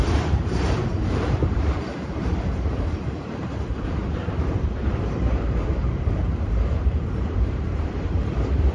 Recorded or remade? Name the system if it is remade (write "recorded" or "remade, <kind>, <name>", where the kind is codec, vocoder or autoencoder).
remade, vocoder, BigVGAN v2